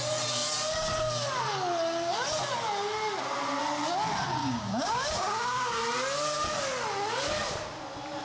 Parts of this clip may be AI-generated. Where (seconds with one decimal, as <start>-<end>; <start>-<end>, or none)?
4.4-5.8